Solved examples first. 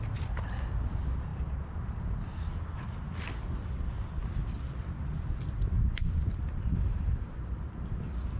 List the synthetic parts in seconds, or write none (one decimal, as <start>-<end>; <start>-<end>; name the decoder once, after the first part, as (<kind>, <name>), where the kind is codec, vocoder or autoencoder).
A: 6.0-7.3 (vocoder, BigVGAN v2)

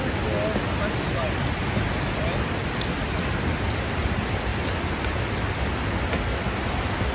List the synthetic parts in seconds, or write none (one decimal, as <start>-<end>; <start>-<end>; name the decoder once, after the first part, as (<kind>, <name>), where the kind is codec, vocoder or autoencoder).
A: 4.5-5.3 (vocoder, BigVGAN v2)

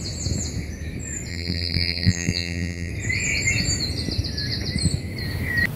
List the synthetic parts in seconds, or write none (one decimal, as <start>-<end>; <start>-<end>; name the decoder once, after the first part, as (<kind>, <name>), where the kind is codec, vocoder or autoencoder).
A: 1.3-2.9 (vocoder, BigVGAN v2)